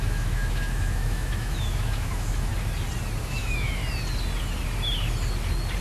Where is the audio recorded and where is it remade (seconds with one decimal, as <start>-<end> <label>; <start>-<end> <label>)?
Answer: 0.0-2.5 remade; 2.5-3.2 recorded; 3.2-3.8 remade; 3.8-5.8 recorded